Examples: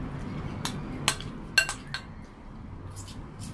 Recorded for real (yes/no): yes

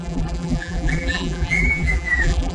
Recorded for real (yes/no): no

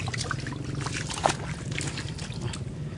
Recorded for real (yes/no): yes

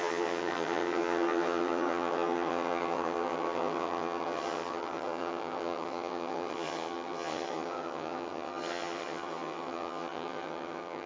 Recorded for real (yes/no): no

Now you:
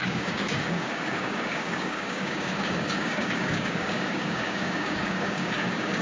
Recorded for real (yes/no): no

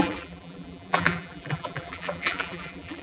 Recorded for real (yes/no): no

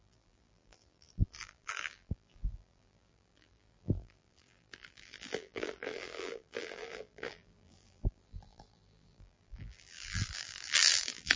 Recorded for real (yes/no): no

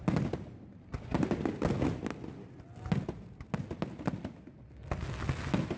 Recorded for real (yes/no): yes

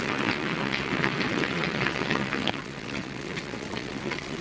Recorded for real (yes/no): no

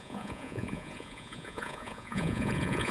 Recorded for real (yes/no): no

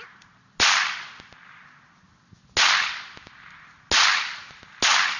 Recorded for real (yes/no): yes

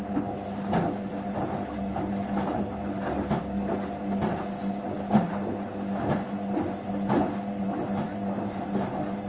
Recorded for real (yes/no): yes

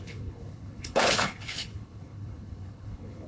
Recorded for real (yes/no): no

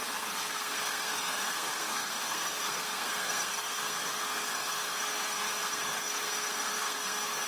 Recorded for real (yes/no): no